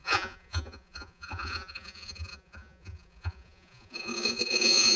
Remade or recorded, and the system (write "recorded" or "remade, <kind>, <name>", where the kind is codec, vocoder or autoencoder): remade, vocoder, Vocos